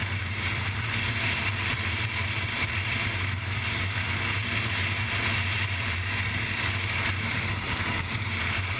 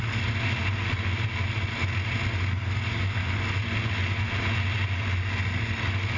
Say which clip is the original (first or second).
second